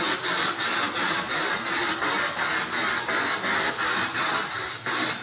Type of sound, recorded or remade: recorded